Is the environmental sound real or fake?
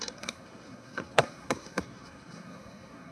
fake